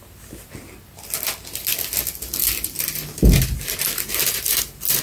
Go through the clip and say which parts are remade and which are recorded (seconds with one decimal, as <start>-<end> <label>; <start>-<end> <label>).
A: 0.0-5.0 recorded

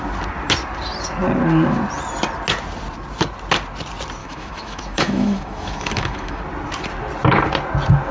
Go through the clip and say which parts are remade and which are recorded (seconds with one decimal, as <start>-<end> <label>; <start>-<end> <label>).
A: 0.0-4.2 recorded; 4.2-6.4 remade; 6.4-8.1 recorded